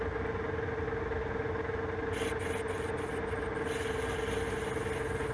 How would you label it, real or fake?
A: real